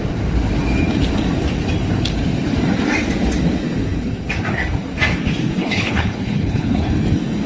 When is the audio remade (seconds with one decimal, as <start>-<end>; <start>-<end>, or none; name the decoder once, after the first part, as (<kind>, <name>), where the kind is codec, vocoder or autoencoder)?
5.6-6.9 (codec, HILCodec)